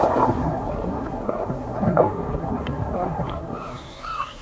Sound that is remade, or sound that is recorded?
remade